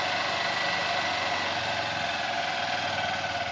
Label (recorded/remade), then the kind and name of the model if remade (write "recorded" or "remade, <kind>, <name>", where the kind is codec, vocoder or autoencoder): recorded